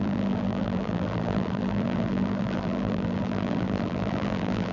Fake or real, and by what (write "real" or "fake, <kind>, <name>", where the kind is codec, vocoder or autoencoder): fake, vocoder, BigVGAN v2